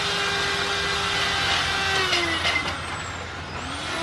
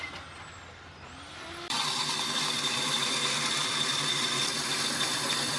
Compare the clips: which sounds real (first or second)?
first